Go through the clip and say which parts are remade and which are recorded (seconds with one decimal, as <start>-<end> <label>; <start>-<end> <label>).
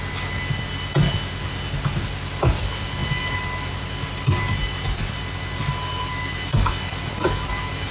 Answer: 0.0-7.9 recorded